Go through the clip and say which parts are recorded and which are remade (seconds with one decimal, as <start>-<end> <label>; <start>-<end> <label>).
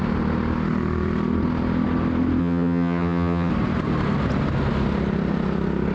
0.0-2.4 recorded; 2.4-3.5 remade; 3.5-5.9 recorded